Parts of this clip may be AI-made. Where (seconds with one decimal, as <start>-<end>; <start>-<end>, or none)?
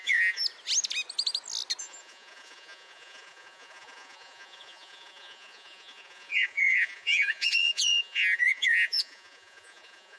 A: 0.0-0.4; 1.8-10.2